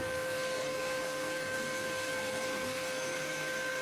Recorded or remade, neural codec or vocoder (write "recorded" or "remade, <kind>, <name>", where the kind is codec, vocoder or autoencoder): remade, codec, SNAC